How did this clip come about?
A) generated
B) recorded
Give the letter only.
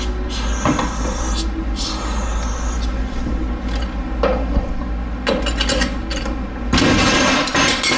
B